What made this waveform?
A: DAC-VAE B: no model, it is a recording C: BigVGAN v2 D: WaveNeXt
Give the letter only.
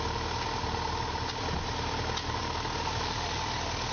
B